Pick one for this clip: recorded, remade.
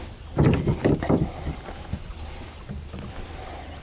recorded